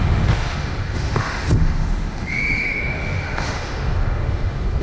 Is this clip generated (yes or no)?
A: yes